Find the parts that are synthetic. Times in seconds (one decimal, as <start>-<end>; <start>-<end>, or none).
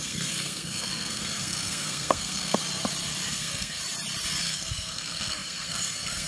0.0-2.6; 3.3-3.8; 4.4-6.3